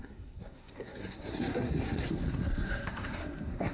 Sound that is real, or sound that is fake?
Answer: fake